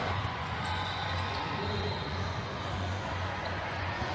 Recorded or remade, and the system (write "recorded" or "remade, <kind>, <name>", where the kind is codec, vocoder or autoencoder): remade, vocoder, Vocos